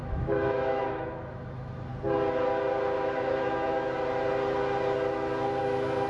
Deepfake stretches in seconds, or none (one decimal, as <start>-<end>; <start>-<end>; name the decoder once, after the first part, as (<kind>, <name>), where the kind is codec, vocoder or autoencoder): 0.0-1.9 (autoencoder, DAC-VAE); 5.6-6.1